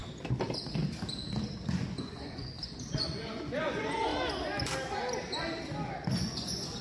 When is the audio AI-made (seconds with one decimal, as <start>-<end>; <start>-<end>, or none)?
1.7-4.1; 6.1-6.8